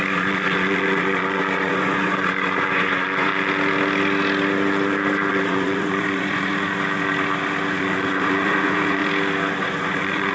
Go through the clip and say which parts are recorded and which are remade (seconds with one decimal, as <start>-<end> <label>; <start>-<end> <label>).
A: 0.0-3.3 remade; 3.3-5.3 recorded; 5.3-6.5 remade; 6.5-7.7 recorded; 7.7-9.0 remade; 9.0-9.6 recorded; 9.6-10.3 remade